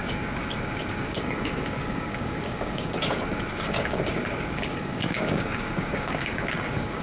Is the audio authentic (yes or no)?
no